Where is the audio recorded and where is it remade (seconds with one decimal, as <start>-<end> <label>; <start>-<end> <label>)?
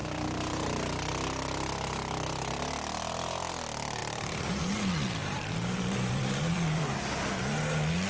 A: 0.0-2.7 remade; 2.7-4.0 recorded; 4.0-4.6 remade; 4.6-5.2 recorded; 5.2-6.9 remade; 6.9-8.1 recorded